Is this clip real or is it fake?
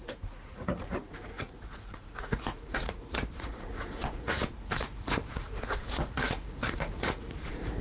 fake